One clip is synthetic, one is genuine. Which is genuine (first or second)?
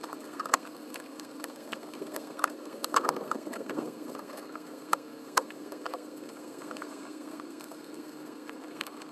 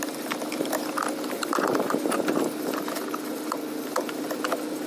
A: second